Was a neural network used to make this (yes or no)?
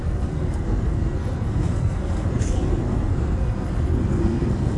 yes